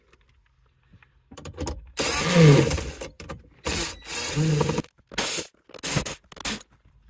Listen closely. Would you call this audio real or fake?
real